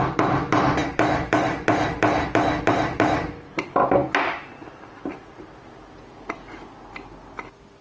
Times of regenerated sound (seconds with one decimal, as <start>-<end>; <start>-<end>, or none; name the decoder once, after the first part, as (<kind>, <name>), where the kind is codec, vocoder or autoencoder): none